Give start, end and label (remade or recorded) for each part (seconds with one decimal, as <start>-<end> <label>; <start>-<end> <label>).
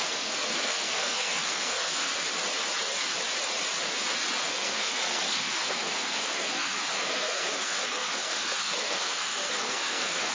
0.0-2.1 remade; 2.1-4.4 recorded; 4.4-10.3 remade